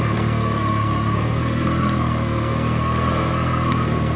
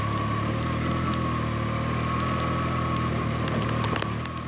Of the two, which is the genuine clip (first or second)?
second